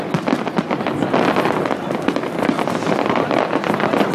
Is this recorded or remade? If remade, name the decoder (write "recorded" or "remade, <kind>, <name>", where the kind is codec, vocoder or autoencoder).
recorded